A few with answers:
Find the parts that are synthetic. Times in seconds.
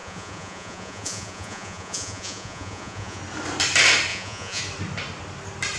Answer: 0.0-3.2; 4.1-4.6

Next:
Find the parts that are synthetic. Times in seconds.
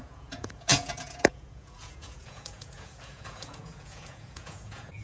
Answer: 0.0-5.0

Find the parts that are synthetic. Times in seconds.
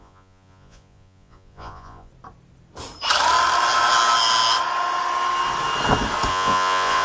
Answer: 0.0-2.1; 6.3-7.0